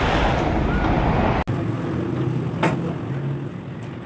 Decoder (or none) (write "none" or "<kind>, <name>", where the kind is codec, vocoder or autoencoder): none